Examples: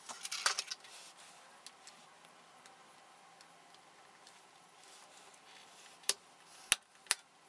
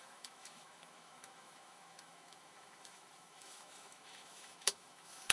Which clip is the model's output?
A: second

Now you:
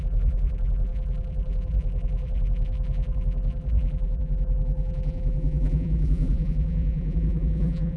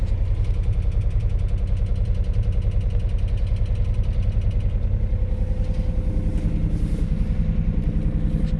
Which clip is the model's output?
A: first